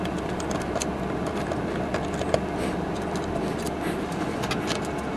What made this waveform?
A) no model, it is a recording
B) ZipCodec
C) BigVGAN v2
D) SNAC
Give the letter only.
A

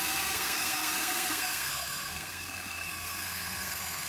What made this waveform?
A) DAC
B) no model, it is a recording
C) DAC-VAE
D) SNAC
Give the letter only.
D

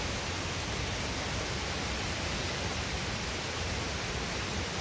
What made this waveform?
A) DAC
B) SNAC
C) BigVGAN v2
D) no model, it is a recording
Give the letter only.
D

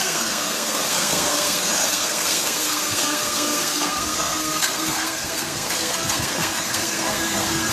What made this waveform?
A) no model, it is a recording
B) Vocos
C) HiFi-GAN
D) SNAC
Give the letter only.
D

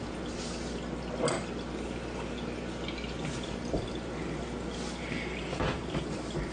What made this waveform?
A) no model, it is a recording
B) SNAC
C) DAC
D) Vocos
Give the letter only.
A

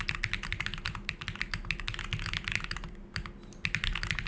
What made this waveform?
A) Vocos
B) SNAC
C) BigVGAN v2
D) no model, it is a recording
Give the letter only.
D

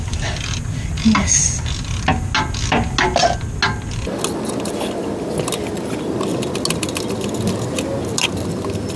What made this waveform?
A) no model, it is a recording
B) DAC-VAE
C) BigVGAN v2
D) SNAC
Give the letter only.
A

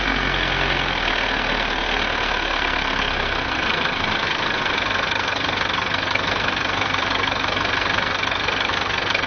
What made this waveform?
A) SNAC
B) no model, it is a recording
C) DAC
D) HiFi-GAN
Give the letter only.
A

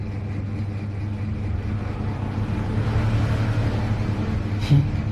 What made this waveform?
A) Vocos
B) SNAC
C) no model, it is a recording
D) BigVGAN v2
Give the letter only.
C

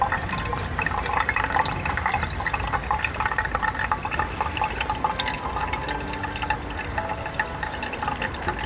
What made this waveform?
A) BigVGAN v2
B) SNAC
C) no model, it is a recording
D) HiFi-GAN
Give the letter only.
C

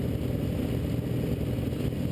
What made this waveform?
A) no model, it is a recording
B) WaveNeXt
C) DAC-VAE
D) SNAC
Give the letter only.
A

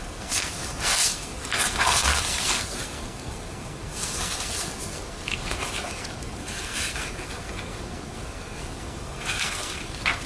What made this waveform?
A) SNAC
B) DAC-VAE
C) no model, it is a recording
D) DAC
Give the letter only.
A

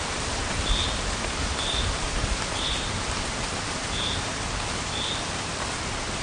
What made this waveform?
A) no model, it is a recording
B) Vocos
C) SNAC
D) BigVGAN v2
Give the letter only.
A